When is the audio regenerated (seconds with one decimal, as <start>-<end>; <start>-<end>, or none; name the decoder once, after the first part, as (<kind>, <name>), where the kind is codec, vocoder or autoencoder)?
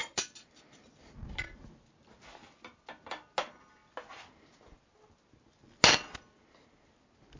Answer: none